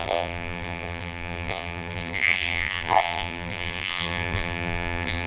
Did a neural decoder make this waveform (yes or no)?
yes